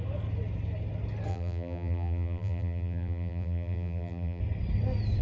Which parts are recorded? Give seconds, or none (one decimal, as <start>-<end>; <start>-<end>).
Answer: 0.0-1.3; 4.4-5.2